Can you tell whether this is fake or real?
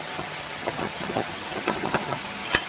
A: fake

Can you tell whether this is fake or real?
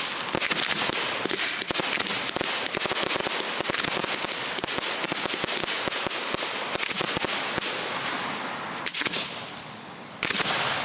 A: real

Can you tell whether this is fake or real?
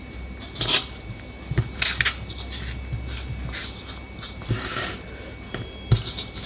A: real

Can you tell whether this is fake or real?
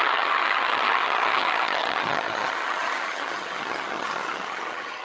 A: fake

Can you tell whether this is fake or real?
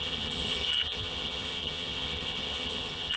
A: fake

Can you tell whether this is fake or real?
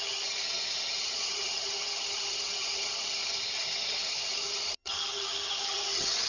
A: fake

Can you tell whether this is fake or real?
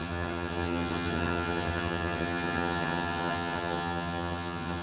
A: fake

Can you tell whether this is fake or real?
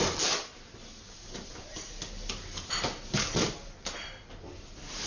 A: real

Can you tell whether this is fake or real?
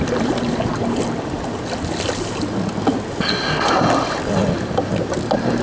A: real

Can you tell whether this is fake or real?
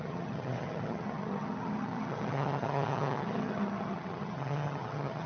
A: fake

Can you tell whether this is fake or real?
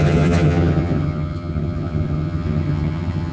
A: fake